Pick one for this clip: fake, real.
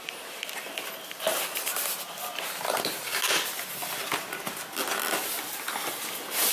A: real